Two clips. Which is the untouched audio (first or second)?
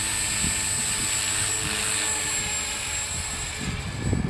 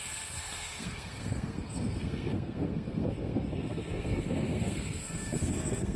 first